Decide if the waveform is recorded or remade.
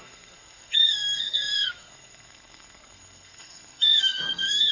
remade